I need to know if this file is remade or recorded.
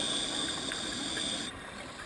recorded